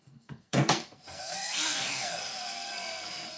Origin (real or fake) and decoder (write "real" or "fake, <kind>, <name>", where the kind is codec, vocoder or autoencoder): fake, codec, SNAC